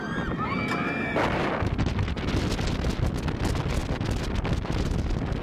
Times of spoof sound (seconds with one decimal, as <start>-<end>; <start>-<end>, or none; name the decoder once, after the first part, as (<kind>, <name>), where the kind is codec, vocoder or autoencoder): none